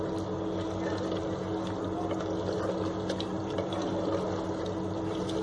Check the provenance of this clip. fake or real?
real